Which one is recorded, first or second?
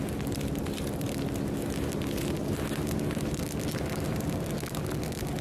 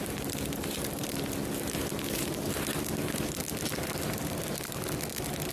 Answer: first